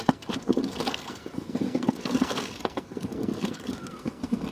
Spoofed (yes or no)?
yes